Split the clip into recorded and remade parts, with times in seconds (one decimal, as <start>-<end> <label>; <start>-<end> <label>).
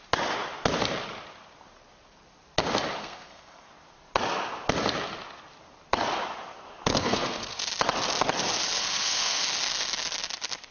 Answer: 0.0-3.0 recorded; 3.0-3.7 remade; 3.7-6.9 recorded; 6.9-7.6 remade; 7.6-8.8 recorded; 8.8-9.4 remade; 9.4-10.7 recorded